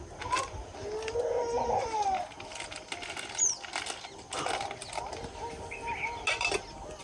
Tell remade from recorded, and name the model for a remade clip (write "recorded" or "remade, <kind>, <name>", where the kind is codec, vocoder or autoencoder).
recorded